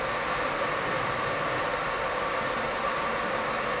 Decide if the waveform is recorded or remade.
recorded